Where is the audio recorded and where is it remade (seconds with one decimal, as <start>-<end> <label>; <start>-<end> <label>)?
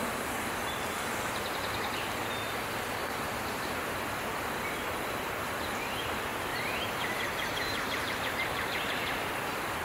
0.0-3.0 recorded; 3.0-4.0 remade; 4.0-6.5 recorded; 6.5-9.8 remade